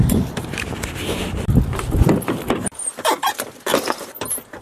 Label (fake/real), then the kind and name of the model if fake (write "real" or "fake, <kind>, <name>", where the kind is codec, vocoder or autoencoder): fake, vocoder, BigVGAN v2